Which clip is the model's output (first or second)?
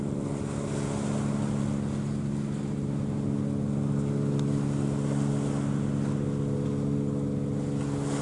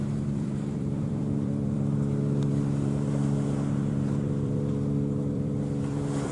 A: second